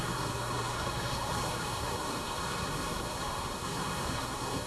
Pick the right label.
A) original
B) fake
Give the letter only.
B